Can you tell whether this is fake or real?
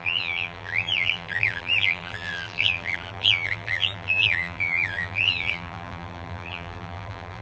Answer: fake